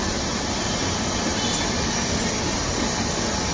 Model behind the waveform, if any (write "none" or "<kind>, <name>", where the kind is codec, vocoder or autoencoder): none